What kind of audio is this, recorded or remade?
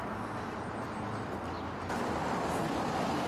recorded